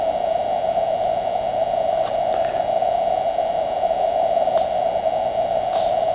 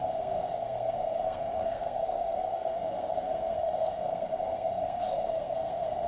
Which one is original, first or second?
first